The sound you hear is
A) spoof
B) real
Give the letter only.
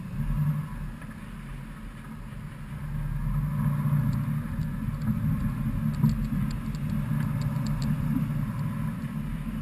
B